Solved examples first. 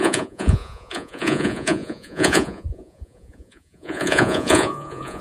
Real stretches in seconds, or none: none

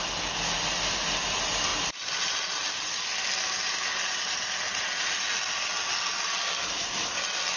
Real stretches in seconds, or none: 0.0-7.6

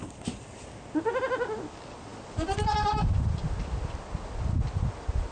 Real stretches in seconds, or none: 0.0-5.3

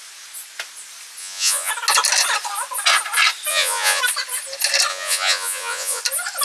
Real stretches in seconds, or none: 0.0-1.2; 1.7-3.5; 4.0-4.9; 6.0-6.4

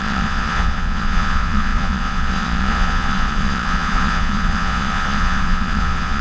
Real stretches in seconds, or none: none

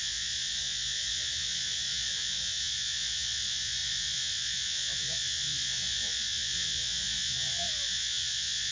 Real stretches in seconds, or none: none